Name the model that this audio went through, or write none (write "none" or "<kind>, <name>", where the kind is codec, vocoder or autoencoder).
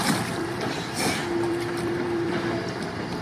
vocoder, BigVGAN v2